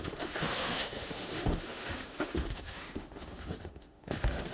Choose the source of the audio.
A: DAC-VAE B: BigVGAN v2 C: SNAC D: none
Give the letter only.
A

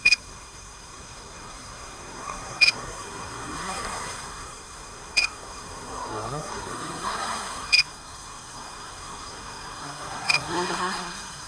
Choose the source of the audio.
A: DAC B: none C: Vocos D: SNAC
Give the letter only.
D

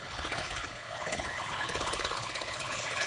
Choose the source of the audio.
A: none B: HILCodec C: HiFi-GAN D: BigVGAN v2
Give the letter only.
B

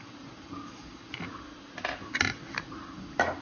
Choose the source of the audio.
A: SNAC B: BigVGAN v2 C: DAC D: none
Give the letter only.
D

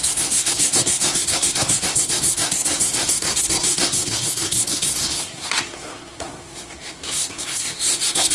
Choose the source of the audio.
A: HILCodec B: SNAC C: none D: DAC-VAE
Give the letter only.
B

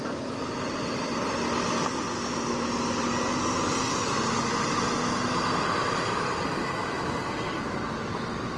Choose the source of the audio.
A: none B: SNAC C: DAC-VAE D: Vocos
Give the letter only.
A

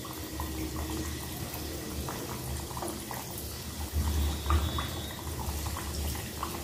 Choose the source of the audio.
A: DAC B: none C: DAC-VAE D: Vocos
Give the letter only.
B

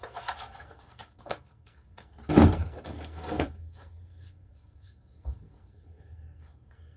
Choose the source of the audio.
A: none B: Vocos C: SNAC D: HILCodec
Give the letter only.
C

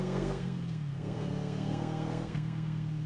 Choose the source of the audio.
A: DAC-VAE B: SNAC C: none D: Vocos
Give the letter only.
B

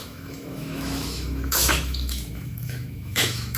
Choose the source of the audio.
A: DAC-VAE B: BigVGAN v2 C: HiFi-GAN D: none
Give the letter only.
A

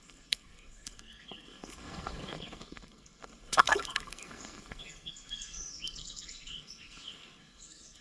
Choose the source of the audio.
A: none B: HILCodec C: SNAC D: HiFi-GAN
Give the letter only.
C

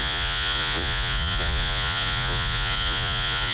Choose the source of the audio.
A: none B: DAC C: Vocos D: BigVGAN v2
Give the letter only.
C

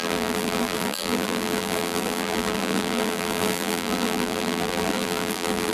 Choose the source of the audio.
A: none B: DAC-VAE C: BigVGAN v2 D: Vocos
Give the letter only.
C